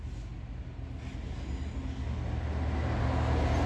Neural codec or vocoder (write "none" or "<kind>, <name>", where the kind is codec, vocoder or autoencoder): none